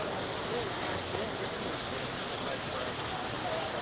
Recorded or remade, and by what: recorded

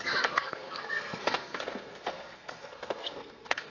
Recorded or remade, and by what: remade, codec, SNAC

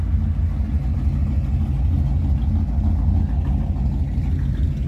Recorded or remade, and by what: recorded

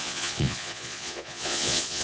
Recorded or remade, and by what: remade, vocoder, Vocos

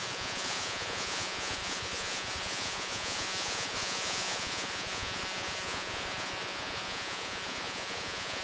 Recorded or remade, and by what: remade, vocoder, Vocos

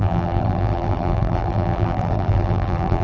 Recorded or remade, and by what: remade, vocoder, BigVGAN v2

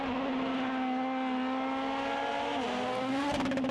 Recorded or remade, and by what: recorded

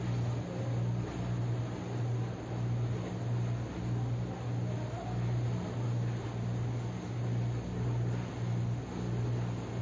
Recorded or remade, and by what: recorded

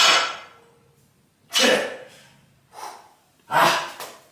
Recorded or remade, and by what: recorded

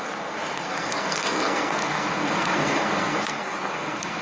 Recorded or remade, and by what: remade, codec, SNAC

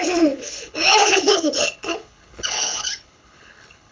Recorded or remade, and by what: remade, codec, HILCodec